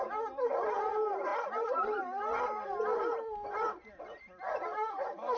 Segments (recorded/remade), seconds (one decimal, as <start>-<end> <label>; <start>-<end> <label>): 0.0-5.4 recorded

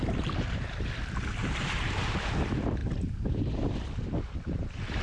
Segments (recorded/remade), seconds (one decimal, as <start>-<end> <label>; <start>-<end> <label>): 0.0-1.4 recorded; 1.4-2.0 remade; 2.0-2.8 recorded; 2.8-3.5 remade; 3.5-5.0 recorded

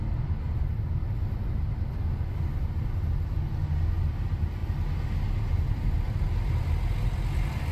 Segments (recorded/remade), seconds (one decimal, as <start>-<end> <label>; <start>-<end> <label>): 0.0-7.7 recorded

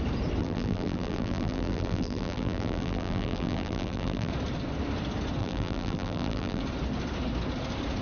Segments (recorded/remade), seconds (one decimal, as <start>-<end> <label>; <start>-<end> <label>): 0.0-0.4 recorded; 0.4-4.3 remade; 4.3-5.4 recorded; 5.4-6.6 remade; 6.6-8.0 recorded